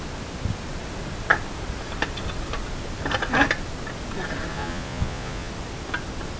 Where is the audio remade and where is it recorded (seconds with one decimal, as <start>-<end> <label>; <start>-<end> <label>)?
0.0-4.5 recorded; 4.5-5.5 remade; 5.5-6.4 recorded